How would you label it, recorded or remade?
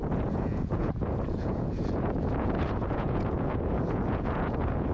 remade